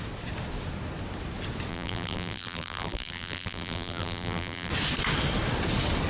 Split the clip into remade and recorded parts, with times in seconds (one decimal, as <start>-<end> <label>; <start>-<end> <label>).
0.0-1.7 recorded; 1.7-4.7 remade; 4.7-6.1 recorded